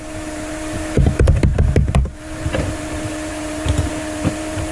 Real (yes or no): no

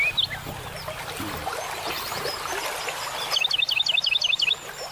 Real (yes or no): yes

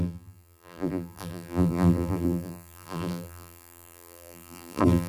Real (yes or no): no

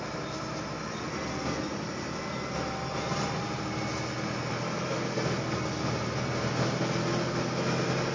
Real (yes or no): yes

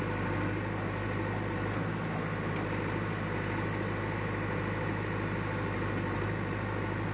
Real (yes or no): yes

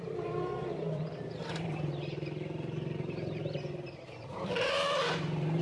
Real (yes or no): no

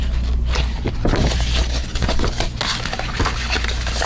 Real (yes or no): yes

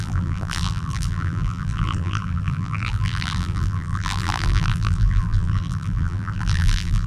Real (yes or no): no